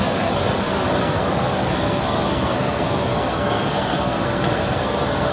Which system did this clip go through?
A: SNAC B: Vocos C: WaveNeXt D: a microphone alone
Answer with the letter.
A